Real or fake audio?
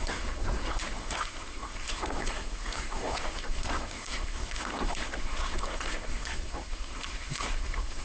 fake